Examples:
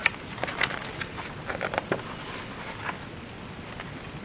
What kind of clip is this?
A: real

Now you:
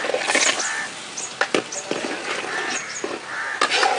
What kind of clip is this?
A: real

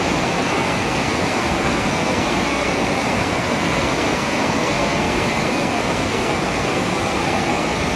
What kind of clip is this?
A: fake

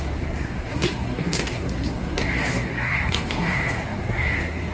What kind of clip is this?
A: fake